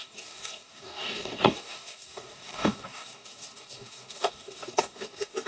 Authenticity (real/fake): fake